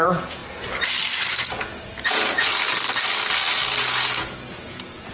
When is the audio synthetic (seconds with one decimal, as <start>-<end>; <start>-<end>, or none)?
0.0-0.4; 1.3-2.5; 3.8-5.1

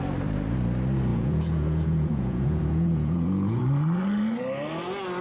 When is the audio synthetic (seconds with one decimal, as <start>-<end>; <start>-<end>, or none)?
1.1-3.6

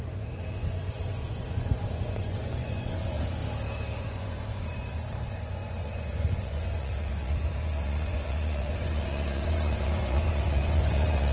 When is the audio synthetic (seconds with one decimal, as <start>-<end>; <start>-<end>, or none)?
0.0-3.4; 4.0-11.3

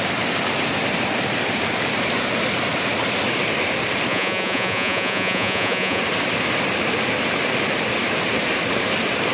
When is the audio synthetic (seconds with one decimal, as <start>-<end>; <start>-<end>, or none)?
4.1-6.0